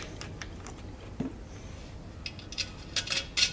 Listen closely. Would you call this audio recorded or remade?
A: recorded